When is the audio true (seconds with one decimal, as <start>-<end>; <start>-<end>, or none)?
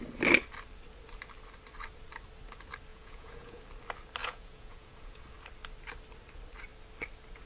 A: 0.0-2.9; 3.6-4.2; 5.2-7.5